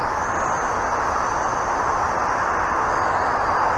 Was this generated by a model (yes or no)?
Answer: no